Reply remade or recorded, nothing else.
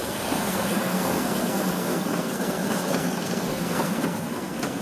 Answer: remade